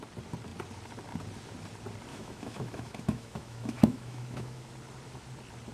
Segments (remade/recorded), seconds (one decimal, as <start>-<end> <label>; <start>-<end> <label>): 0.0-2.1 recorded; 2.1-4.7 remade; 4.7-5.7 recorded